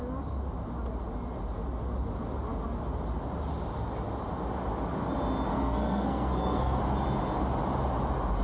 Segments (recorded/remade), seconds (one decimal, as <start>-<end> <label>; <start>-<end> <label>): 0.0-5.5 recorded; 5.5-6.8 remade; 6.8-8.4 recorded